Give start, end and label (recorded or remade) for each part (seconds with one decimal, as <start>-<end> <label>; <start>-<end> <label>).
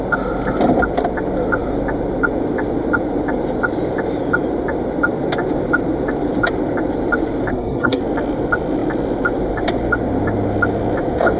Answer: 0.0-7.5 recorded; 7.5-8.0 remade; 8.0-11.4 recorded